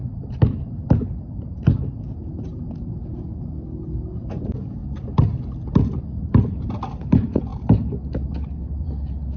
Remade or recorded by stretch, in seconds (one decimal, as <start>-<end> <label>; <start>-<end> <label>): 0.0-7.5 recorded; 7.5-8.1 remade; 8.1-9.4 recorded